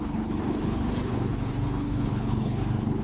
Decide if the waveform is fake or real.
fake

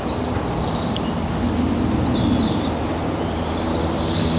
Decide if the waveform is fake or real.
real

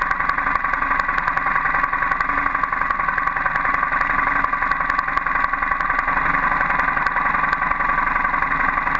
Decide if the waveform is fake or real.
real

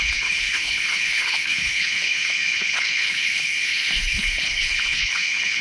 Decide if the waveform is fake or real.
fake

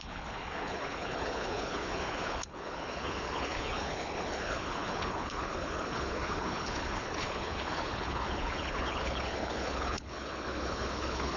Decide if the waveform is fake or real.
fake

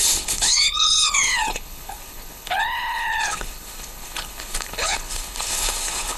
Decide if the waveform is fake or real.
fake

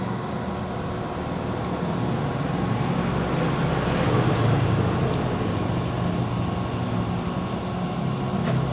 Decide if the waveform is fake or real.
real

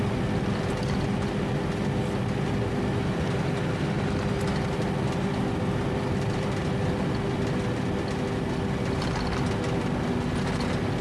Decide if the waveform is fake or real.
real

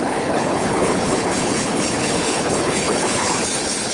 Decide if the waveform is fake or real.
fake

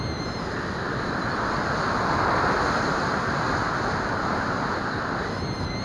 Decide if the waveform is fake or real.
real